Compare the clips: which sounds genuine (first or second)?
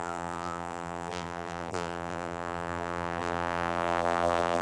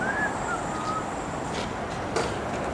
second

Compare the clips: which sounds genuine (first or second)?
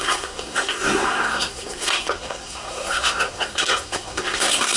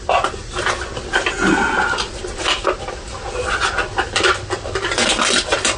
second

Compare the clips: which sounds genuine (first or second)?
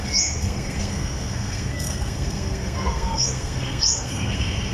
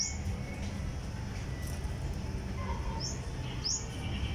second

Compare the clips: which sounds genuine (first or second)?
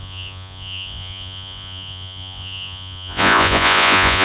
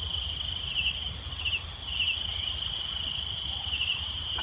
second